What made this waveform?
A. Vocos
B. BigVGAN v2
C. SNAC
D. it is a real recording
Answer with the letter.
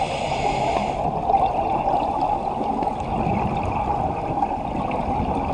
D